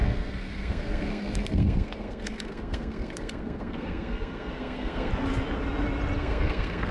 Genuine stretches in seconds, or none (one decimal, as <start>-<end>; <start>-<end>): 5.1-6.2